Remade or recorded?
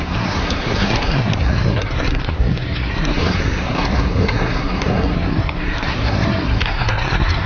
remade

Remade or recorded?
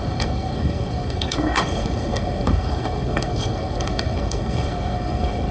remade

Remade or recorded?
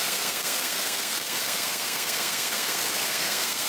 remade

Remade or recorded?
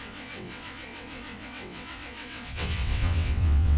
remade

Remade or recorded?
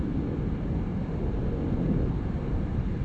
recorded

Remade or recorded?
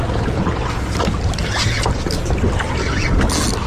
recorded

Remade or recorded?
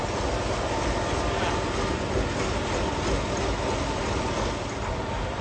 recorded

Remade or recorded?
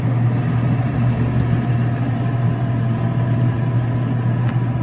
recorded